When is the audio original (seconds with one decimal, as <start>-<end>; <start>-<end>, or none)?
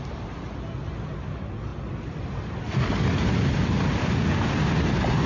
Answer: 0.0-5.3